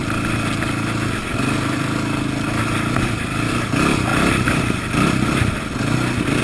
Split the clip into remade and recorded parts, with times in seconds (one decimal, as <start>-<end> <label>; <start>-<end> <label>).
0.0-6.4 recorded